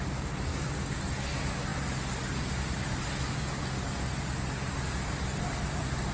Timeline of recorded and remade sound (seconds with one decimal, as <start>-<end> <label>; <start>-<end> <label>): 0.0-0.5 recorded; 0.5-1.0 remade; 1.0-6.1 recorded